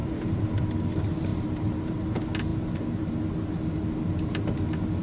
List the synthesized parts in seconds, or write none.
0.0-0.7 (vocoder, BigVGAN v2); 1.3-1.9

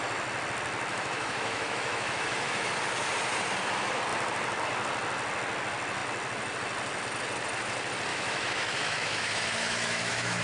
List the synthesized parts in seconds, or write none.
0.9-2.7 (autoencoder, DAC-VAE); 8.1-10.4